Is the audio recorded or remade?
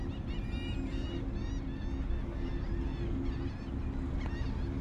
recorded